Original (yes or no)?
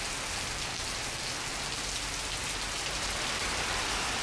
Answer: yes